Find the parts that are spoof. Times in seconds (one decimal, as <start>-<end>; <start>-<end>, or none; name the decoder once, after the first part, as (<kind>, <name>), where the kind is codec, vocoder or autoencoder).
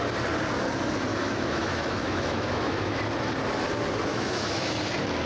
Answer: 1.1-3.0 (autoencoder, DAC-VAE); 4.1-4.7